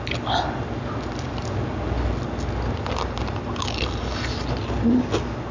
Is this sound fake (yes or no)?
no